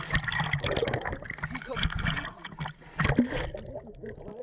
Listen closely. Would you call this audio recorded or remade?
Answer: recorded